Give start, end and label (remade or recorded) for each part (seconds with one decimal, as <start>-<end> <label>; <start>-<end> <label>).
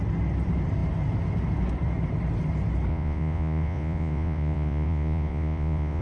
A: 0.0-2.9 recorded; 2.9-6.0 remade